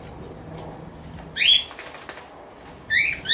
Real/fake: real